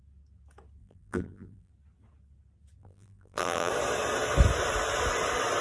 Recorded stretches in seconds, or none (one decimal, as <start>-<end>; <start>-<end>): 0.0-0.8; 1.7-2.8; 3.7-5.6